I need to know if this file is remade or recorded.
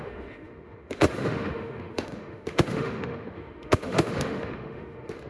remade